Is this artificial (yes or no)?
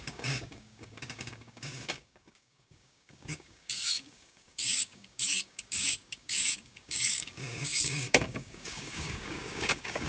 yes